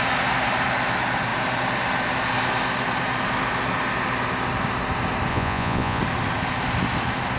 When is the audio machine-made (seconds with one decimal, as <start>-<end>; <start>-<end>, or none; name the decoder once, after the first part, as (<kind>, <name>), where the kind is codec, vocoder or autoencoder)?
5.3-6.0 (vocoder, Vocos)